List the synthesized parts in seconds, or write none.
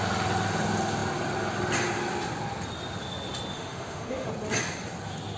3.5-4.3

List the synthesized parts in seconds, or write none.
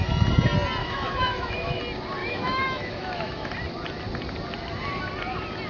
0.8-1.8; 2.2-3.5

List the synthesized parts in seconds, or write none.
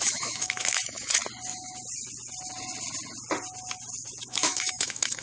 0.0-1.2; 4.3-5.2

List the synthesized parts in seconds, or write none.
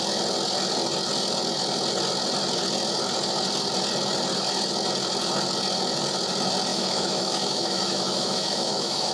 6.7-9.1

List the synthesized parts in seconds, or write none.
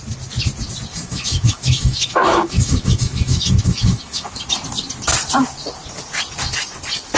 0.9-4.3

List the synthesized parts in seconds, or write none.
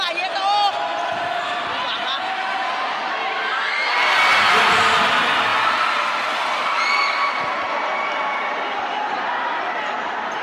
none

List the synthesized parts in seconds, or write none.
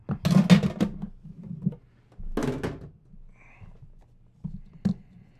none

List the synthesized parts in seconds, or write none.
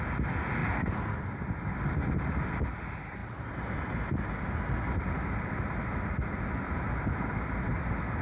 none